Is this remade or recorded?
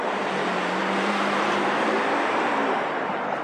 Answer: remade